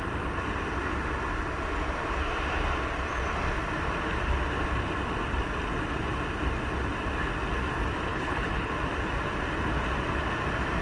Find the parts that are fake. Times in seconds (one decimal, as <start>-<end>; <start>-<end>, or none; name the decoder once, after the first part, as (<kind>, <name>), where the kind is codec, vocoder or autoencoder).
8.1-8.7 (codec, HILCodec)